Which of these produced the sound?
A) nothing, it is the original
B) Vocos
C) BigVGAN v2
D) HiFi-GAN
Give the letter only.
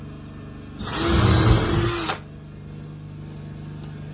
A